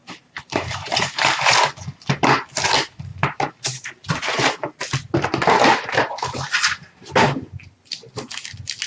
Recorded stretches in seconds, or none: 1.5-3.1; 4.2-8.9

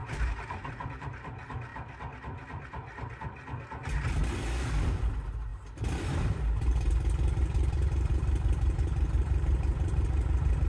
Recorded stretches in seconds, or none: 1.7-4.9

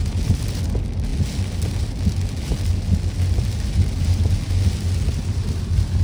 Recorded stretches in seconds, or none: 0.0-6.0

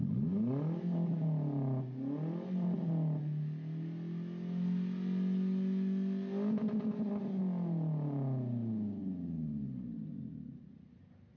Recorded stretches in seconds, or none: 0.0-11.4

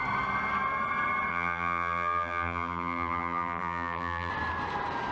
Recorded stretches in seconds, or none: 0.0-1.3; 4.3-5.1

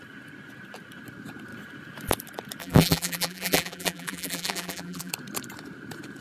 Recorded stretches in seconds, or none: 0.0-2.6; 5.1-6.2

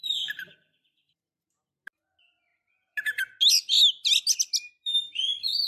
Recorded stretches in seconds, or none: 1.1-5.7

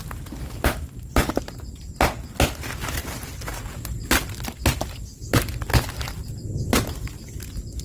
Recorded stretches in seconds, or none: 0.0-3.0; 3.5-7.8